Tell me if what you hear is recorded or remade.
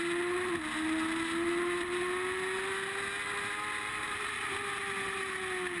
recorded